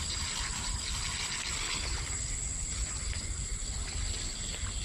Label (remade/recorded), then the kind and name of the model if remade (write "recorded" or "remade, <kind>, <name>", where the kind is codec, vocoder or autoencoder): recorded